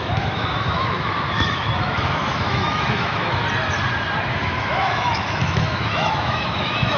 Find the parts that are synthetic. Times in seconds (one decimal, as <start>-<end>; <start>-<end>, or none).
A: 0.0-3.4; 4.3-7.0